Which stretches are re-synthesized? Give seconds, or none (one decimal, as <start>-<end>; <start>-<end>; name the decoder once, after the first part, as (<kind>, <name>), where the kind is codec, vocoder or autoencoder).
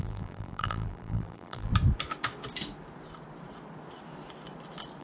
0.0-1.7 (vocoder, BigVGAN v2)